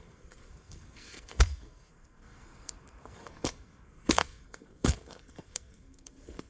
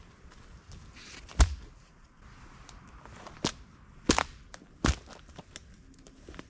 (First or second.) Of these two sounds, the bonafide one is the second